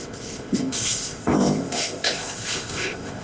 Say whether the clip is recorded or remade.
remade